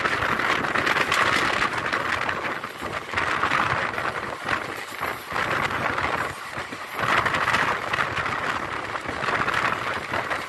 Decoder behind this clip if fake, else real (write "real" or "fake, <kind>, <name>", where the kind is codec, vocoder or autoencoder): real